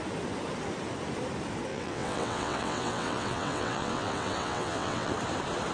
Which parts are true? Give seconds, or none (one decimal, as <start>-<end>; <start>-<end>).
0.0-1.7; 5.1-5.7